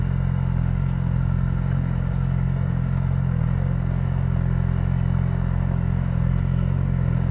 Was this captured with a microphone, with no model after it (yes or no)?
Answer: no